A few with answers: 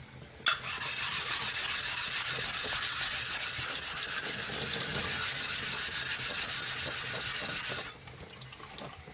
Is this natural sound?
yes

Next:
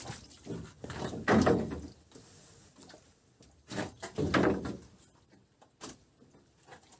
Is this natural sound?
yes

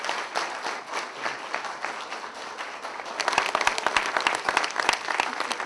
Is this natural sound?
yes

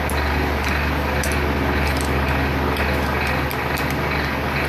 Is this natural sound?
yes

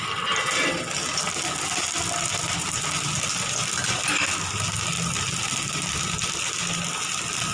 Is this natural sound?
yes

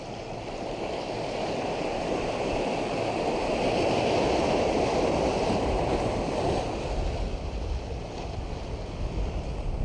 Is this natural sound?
yes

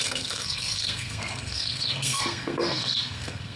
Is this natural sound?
no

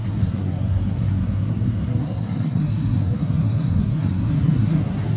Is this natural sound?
no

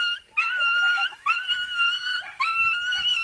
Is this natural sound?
yes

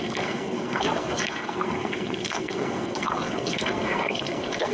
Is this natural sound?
no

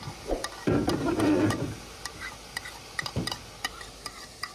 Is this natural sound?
yes